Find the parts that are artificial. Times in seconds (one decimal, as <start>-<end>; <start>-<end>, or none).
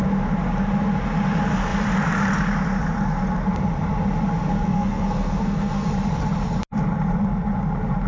4.5-5.9